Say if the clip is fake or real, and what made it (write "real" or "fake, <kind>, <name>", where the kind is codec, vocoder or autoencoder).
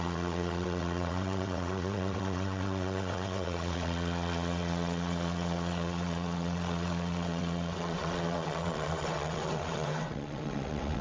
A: fake, vocoder, WaveNeXt